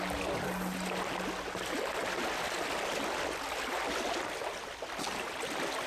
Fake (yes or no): no